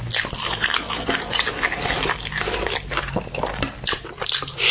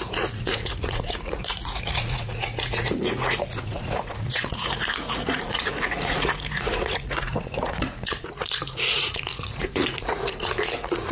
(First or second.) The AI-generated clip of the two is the second